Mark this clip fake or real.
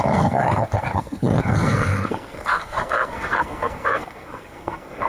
fake